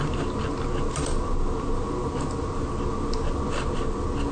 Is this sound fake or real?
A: real